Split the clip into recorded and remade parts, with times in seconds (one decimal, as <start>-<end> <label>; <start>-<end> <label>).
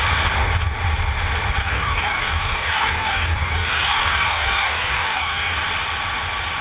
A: 0.0-1.6 recorded; 1.6-5.6 remade; 5.6-6.6 recorded